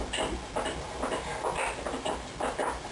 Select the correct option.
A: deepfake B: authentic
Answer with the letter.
B